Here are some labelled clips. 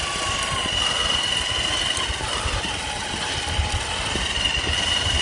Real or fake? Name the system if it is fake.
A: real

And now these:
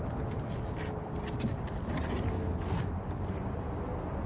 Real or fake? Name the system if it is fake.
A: real